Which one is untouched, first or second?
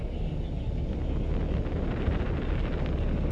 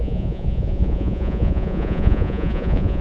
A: first